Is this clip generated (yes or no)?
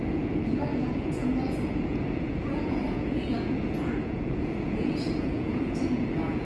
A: yes